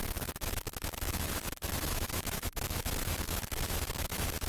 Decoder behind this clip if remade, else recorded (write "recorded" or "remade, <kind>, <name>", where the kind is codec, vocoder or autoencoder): remade, autoencoder, DAC-VAE